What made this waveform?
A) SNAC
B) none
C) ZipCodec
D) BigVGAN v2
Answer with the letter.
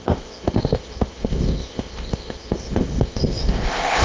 C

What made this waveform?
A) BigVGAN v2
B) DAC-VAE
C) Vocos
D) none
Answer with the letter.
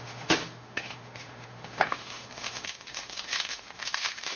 B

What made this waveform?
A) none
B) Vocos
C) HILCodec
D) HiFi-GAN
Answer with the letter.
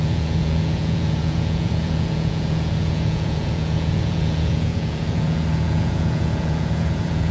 B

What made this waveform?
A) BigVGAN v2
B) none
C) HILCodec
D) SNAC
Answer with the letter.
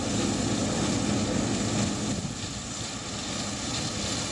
B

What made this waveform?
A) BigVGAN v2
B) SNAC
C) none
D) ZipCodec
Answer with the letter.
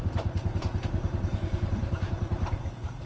A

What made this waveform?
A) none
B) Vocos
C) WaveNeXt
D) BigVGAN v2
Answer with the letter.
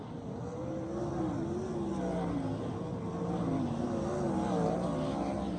A